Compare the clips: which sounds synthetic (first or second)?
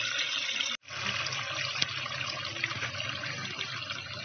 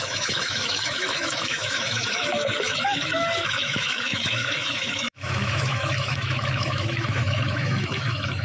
second